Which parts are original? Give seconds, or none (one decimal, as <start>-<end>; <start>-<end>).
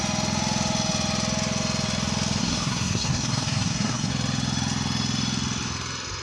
0.0-2.4; 4.1-6.2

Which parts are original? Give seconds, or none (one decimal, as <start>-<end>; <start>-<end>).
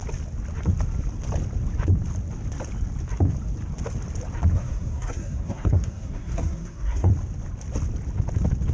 0.0-4.5; 7.1-8.7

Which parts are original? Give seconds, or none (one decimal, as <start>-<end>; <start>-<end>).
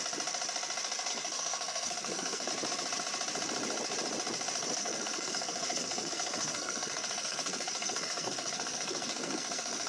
0.0-1.1; 2.5-4.8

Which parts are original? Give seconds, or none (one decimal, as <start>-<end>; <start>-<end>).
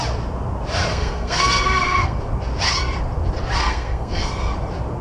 0.0-0.9; 2.2-3.6; 4.5-5.0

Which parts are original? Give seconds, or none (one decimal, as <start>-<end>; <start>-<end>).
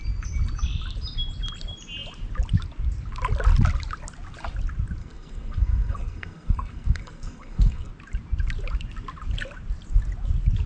0.0-5.0; 7.9-10.7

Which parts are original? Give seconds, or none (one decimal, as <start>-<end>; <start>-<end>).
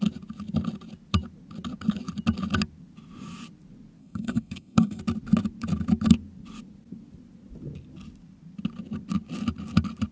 0.0-4.0; 5.0-10.1